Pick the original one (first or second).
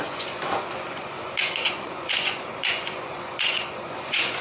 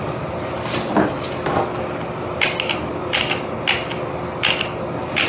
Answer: second